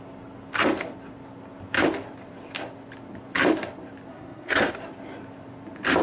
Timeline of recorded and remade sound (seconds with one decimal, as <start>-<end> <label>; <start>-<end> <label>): 0.0-4.1 recorded; 4.1-4.7 remade; 4.7-6.0 recorded